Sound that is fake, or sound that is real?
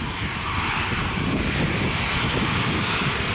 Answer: real